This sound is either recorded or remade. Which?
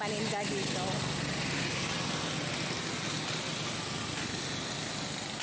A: recorded